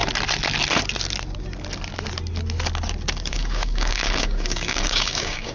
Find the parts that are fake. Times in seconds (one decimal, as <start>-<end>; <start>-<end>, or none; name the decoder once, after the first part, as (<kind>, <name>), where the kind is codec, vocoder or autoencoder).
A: 3.3-5.5 (codec, DAC)